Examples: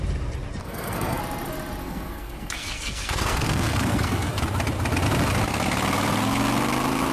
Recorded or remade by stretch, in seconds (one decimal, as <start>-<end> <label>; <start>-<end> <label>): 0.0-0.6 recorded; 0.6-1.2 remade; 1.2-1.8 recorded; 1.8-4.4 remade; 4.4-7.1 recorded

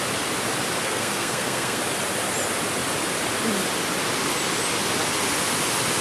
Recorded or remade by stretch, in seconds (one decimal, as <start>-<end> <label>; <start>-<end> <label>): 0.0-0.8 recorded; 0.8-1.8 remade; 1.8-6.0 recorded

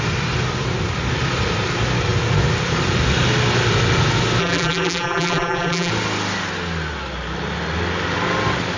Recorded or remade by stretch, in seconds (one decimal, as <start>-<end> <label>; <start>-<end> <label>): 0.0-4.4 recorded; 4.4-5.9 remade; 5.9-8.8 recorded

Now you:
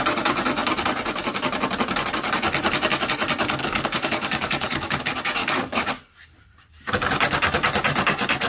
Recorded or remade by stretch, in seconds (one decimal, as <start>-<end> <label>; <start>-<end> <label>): 0.0-3.6 recorded; 3.6-5.0 remade; 5.0-5.4 recorded; 5.4-5.9 remade; 5.9-8.5 recorded